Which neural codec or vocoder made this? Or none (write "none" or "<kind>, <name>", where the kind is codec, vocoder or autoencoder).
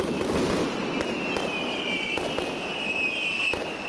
none